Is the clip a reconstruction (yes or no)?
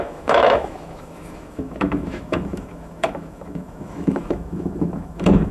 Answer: yes